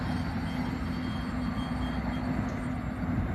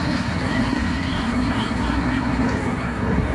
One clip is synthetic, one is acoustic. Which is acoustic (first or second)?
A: first